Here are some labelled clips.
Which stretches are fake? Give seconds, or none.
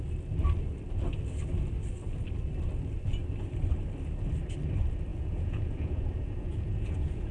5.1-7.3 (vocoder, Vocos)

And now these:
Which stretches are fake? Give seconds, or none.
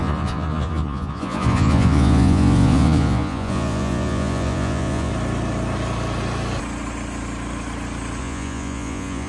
0.0-5.1 (vocoder, Vocos); 8.2-9.3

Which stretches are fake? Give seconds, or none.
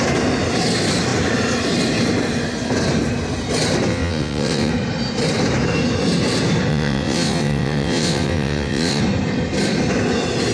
3.9-4.7 (vocoder, WaveNeXt); 6.7-9.0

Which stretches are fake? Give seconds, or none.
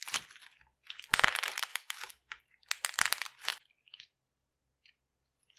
1.7-2.4 (autoencoder, DAC-VAE)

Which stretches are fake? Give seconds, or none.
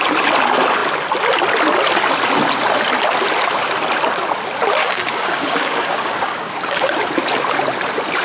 4.8-6.9 (codec, DAC)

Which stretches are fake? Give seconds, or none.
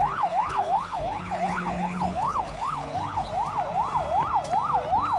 0.0-3.3 (codec, HILCodec)